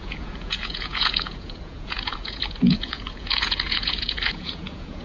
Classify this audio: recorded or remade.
remade